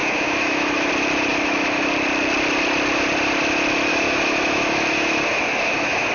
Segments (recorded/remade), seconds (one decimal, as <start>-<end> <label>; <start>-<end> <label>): 0.0-0.9 remade; 0.9-1.3 recorded; 1.3-1.9 remade; 1.9-3.9 recorded; 3.9-6.1 remade